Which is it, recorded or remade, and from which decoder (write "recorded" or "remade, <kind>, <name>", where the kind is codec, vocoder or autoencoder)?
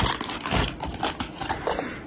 recorded